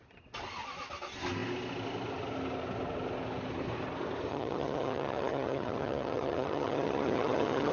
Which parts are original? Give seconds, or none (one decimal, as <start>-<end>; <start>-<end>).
0.0-4.3